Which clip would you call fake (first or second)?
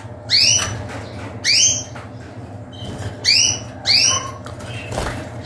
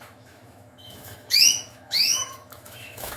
second